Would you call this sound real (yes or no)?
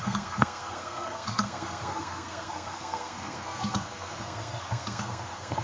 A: no